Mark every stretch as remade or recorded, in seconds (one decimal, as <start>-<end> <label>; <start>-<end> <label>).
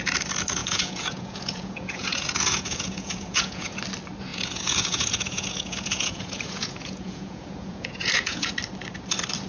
0.0-0.6 recorded; 0.6-3.8 remade; 3.8-4.3 recorded; 4.3-8.5 remade; 8.5-9.5 recorded